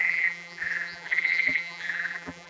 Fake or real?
fake